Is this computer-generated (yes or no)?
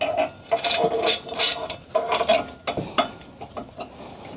no